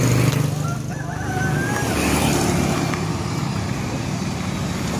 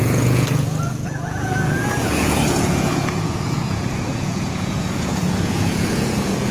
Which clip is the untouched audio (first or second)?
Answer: first